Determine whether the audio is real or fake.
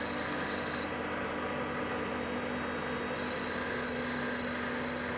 real